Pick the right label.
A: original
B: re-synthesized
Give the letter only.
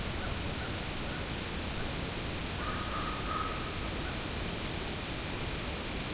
A